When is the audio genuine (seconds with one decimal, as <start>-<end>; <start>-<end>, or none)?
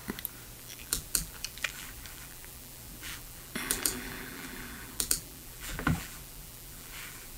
0.0-0.6